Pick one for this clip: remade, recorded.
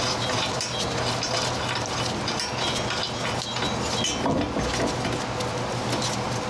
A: recorded